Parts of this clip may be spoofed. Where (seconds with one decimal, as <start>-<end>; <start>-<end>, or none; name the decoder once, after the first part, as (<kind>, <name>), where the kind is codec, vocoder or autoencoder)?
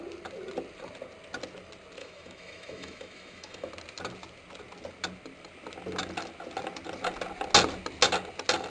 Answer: 2.0-3.7 (autoencoder, DAC-VAE)